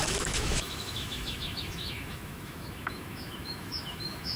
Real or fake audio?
fake